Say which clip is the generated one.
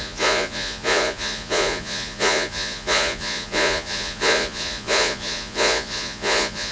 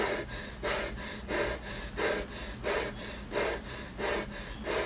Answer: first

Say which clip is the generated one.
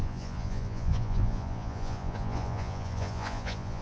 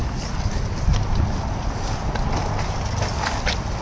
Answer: first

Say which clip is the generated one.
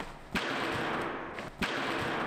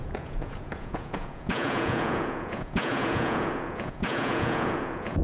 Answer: second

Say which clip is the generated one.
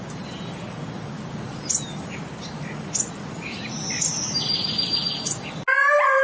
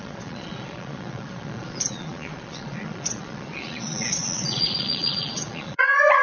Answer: second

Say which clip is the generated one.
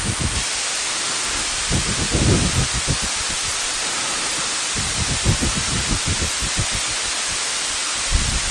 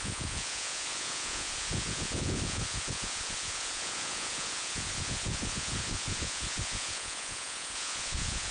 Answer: second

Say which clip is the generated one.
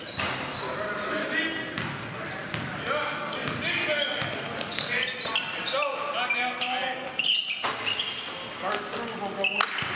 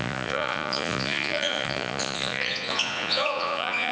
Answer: second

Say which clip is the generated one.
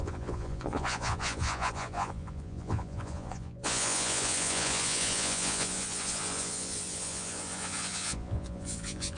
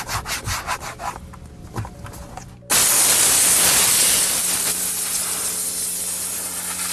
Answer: first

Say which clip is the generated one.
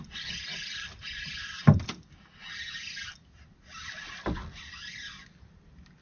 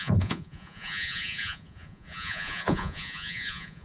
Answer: second